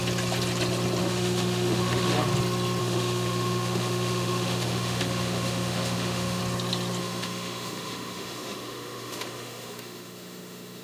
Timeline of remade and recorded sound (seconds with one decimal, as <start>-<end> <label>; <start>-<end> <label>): 0.0-1.0 recorded; 1.0-2.3 remade; 2.3-2.8 recorded; 2.8-6.4 remade; 6.4-7.0 recorded; 7.0-10.8 remade